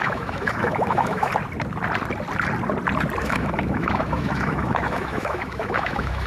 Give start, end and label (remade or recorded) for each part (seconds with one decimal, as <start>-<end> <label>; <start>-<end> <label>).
0.0-1.3 remade; 1.3-3.2 recorded; 3.2-6.3 remade